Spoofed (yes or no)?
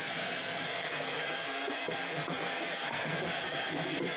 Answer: yes